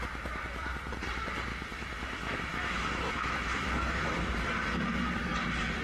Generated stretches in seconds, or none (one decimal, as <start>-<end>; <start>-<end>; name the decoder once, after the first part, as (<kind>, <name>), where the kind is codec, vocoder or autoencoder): 1.5-4.2 (autoencoder, DAC-VAE)